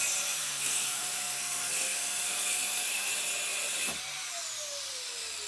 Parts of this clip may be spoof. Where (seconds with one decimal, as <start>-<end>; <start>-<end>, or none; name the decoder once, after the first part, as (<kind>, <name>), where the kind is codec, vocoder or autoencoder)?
0.4-3.1 (codec, SNAC)

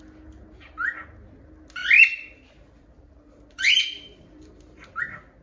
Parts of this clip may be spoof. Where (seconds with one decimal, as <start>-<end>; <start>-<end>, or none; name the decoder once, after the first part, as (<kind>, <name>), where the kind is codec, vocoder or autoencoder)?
1.8-5.0 (vocoder, BigVGAN v2)

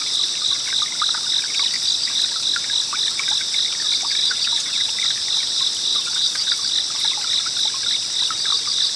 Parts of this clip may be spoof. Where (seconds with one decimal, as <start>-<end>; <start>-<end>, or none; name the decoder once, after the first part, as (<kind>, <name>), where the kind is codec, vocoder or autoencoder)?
4.2-4.9 (vocoder, WaveNeXt); 5.9-6.5

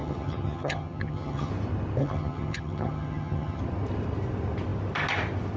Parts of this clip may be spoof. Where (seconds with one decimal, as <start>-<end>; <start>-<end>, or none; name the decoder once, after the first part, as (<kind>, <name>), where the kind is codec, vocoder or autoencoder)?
0.0-1.5 (vocoder, HiFi-GAN); 2.0-3.6

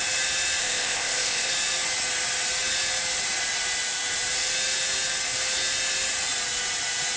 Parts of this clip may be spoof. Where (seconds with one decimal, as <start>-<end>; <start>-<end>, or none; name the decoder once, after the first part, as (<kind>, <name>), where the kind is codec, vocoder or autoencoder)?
0.6-1.5 (codec, ZipCodec)

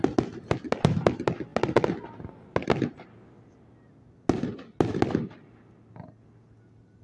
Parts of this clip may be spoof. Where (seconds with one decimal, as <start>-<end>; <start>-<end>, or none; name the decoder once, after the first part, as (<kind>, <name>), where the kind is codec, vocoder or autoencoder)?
none

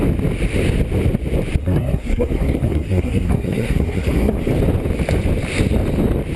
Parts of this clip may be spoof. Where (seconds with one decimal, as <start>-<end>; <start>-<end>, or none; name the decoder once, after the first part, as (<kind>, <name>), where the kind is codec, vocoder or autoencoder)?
1.6-4.5 (codec, SNAC)